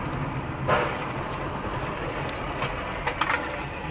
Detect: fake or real real